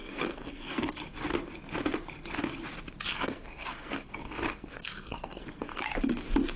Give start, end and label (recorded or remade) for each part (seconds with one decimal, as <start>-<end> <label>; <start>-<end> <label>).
0.0-0.9 remade; 0.9-3.1 recorded; 3.1-5.8 remade; 5.8-6.6 recorded